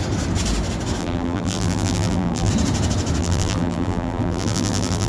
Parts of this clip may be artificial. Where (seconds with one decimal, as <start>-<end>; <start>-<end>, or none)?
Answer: 1.0-2.5; 3.2-5.1